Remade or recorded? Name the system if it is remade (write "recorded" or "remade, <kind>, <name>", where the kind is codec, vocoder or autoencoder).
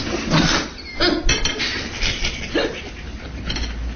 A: recorded